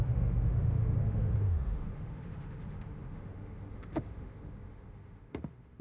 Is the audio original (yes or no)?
no